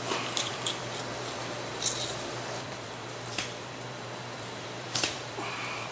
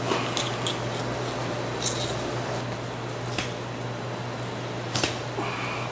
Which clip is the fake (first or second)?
first